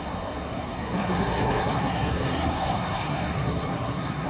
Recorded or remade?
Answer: remade